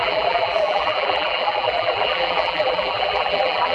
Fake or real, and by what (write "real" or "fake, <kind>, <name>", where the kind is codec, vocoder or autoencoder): fake, vocoder, BigVGAN v2